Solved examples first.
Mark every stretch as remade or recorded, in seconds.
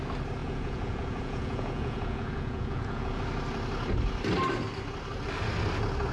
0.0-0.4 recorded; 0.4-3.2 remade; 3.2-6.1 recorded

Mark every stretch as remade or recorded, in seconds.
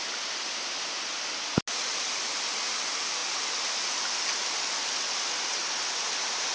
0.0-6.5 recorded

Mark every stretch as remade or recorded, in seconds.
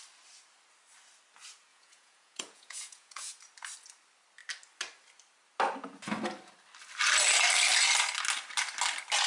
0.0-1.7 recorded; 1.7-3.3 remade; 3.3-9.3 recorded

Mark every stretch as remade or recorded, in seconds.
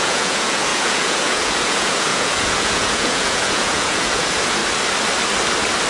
0.0-4.6 remade; 4.6-5.9 recorded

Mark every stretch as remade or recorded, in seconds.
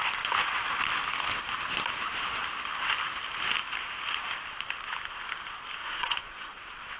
0.0-5.8 recorded; 5.8-6.5 remade; 6.5-7.0 recorded